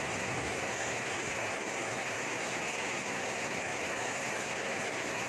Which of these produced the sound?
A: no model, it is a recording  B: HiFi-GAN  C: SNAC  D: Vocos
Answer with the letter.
C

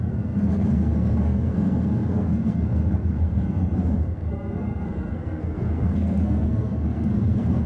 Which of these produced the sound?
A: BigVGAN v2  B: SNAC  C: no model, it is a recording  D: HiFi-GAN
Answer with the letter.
B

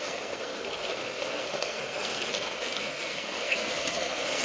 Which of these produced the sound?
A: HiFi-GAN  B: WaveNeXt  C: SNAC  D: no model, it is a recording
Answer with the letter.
C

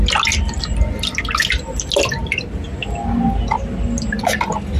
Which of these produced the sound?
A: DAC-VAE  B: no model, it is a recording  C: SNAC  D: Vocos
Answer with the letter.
B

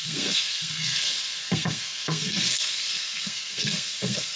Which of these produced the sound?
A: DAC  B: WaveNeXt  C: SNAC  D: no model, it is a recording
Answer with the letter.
C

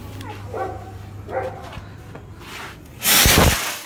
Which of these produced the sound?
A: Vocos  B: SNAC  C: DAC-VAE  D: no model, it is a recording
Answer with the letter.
D